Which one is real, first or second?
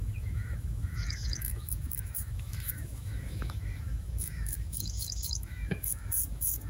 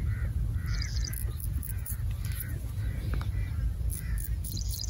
second